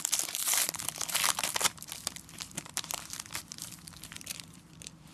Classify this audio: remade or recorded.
remade